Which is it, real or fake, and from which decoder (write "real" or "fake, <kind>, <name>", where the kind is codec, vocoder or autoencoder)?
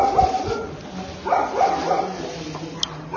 real